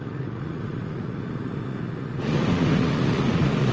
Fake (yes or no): yes